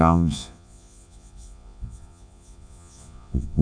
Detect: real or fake fake